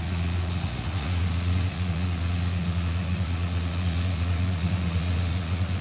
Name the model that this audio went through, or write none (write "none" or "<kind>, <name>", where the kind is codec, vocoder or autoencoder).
vocoder, Vocos